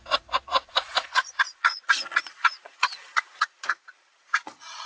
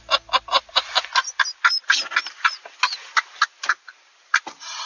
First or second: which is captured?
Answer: second